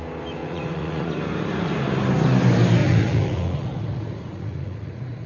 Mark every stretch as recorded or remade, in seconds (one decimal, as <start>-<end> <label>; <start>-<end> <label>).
0.0-0.4 recorded; 0.4-1.1 remade; 1.1-2.8 recorded; 2.8-5.3 remade

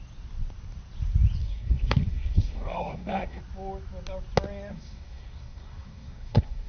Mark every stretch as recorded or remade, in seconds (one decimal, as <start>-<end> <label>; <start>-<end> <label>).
0.0-1.4 recorded; 1.4-3.4 remade; 3.4-4.7 recorded; 4.7-6.7 remade

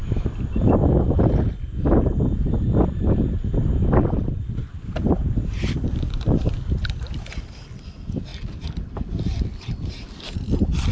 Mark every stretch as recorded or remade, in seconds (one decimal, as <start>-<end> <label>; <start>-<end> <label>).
0.0-0.7 remade; 0.7-10.9 recorded

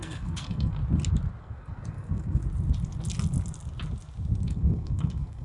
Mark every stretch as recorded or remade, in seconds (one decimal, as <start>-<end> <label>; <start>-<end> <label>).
0.0-0.8 remade; 0.8-1.4 recorded; 1.4-2.4 remade; 2.4-4.5 recorded; 4.5-5.4 remade

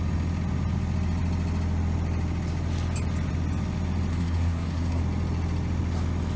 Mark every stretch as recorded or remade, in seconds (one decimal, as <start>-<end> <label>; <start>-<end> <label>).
0.0-4.1 recorded; 4.1-5.0 remade; 5.0-6.4 recorded

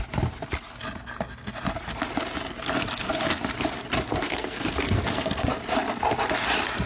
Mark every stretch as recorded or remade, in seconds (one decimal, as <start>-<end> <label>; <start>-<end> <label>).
0.0-4.1 recorded; 4.1-5.5 remade; 5.5-6.9 recorded